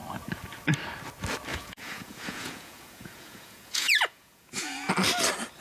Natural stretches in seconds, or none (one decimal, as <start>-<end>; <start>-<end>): 0.0-1.5; 4.9-5.6